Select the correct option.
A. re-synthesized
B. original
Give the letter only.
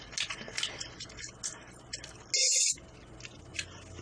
B